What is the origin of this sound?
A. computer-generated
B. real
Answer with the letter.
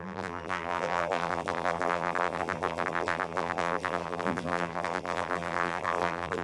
A